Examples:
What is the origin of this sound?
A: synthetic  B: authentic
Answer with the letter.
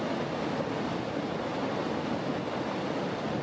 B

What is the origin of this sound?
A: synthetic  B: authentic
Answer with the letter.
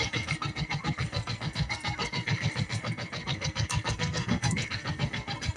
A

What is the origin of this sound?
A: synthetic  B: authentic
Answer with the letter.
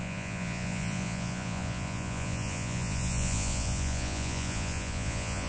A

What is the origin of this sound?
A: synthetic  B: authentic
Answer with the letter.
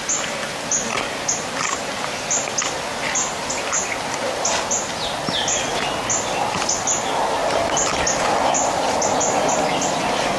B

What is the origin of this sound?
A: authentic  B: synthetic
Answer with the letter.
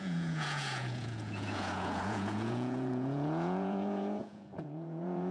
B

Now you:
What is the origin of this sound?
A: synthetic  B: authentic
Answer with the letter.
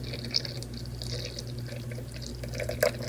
B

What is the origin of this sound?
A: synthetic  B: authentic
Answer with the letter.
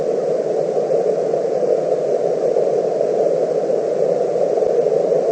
B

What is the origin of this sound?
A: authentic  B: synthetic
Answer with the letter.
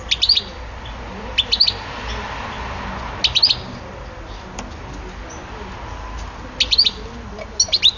A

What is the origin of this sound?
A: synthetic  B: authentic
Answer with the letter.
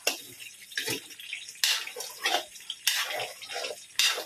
B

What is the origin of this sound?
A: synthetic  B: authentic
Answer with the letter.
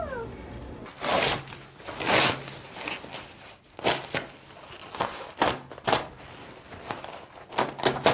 B